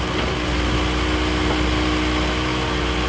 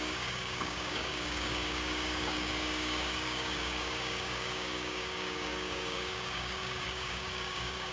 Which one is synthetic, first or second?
second